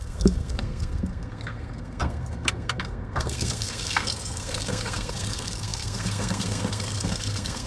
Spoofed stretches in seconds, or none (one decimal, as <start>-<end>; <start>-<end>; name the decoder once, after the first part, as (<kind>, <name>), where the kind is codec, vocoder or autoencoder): 0.0-7.7 (codec, SNAC)